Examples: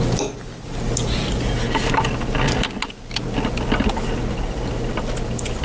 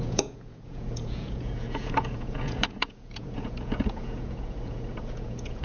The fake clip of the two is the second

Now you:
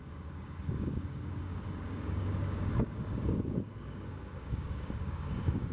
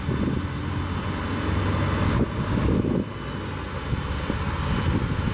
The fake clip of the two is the first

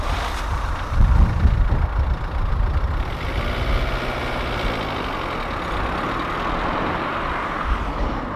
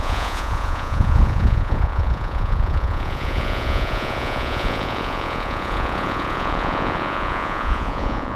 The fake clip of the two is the second